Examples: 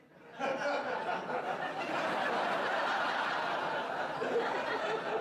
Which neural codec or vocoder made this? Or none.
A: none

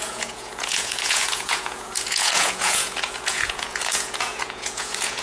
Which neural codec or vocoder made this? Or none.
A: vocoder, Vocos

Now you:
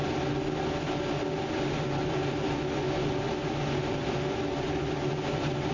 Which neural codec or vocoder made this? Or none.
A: none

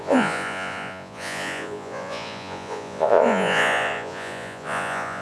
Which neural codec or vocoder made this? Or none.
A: vocoder, Vocos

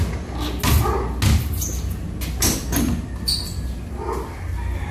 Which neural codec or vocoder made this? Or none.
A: none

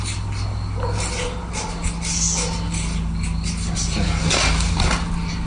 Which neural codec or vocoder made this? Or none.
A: none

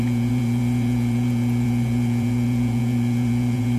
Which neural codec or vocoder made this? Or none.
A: vocoder, Vocos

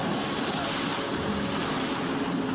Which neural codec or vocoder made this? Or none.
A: none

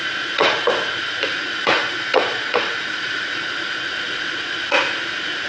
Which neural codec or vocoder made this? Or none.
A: vocoder, Vocos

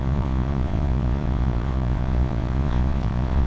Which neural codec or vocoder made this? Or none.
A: vocoder, Vocos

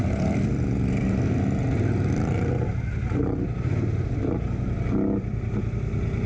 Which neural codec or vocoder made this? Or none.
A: none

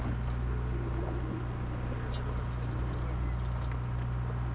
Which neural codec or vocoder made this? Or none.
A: none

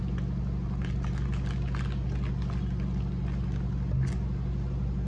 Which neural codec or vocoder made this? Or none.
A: none